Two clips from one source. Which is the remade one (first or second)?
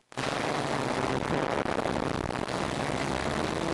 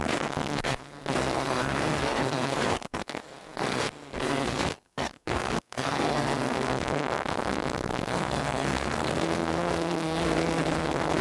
second